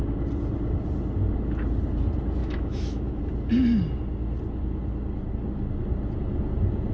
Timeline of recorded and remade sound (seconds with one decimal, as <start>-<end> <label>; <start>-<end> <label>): 0.0-2.4 recorded; 2.4-3.2 remade; 3.2-6.9 recorded